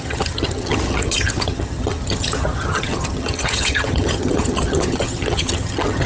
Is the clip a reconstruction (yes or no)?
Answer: yes